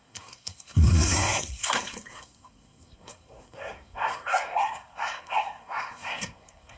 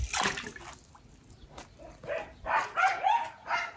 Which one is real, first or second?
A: second